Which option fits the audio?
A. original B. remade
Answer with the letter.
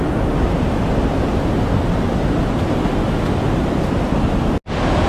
A